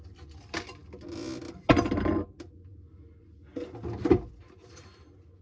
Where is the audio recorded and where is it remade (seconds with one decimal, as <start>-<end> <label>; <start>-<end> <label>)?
0.0-5.4 recorded